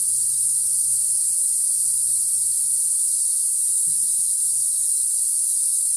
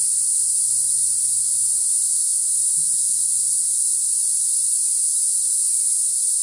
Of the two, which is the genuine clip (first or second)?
second